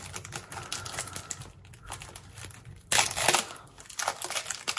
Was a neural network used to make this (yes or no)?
no